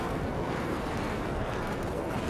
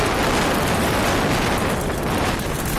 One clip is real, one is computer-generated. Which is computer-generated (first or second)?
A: first